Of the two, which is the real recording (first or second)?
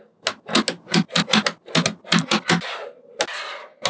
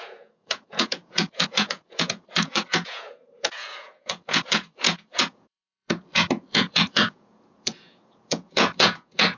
first